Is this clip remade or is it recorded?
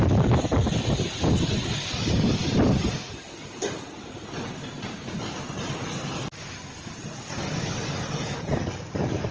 recorded